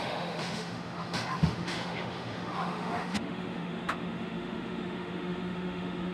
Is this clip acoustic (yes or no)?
no